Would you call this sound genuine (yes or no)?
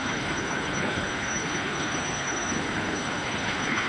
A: no